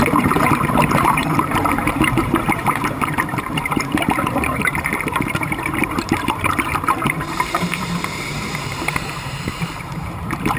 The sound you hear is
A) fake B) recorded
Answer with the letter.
A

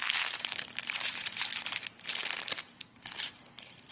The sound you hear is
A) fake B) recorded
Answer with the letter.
A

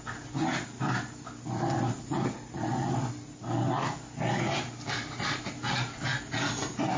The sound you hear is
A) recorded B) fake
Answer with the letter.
A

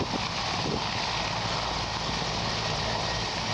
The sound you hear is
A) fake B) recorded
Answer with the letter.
B